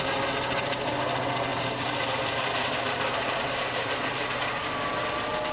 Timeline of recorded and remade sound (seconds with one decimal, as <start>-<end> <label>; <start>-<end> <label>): 0.0-1.5 recorded; 1.5-4.2 remade; 4.2-5.5 recorded